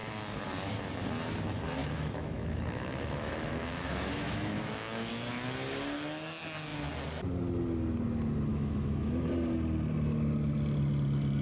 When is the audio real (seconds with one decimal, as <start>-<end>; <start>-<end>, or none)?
0.0-1.8; 5.1-8.5; 9.3-11.4